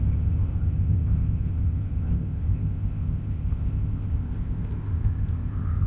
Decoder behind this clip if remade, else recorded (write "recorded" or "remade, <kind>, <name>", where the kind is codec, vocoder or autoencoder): remade, codec, ZipCodec